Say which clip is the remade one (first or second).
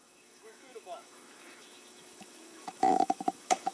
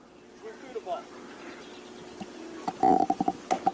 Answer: first